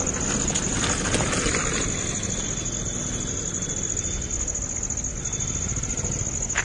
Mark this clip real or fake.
real